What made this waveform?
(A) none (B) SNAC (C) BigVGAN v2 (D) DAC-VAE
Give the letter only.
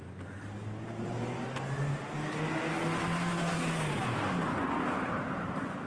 A